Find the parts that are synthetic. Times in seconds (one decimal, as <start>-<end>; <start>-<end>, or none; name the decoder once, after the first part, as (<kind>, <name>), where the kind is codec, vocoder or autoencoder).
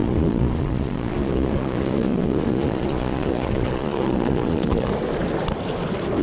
0.0-4.9 (vocoder, Vocos)